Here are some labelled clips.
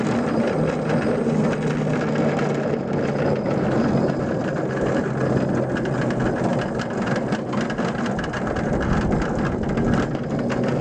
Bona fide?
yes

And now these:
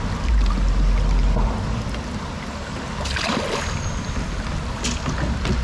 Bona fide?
yes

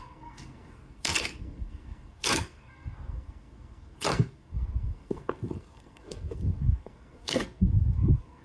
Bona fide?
no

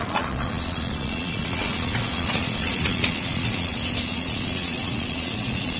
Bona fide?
no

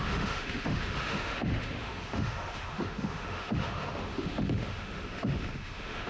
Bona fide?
no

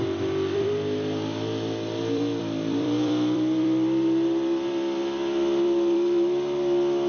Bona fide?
no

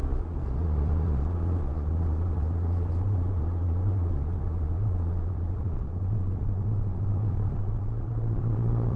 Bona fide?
no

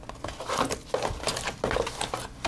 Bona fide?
yes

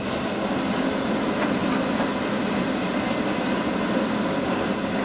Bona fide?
yes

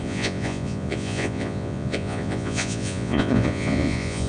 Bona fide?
no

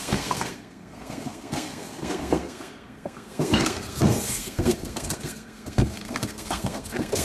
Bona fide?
no